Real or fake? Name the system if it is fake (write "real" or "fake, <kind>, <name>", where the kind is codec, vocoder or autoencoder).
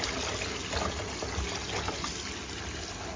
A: real